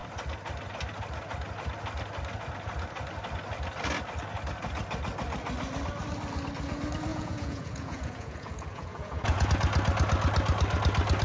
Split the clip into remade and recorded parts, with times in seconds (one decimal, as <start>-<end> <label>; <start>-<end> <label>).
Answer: 0.0-7.1 recorded; 7.1-9.5 remade; 9.5-11.2 recorded